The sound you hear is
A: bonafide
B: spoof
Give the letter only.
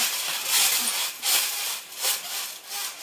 A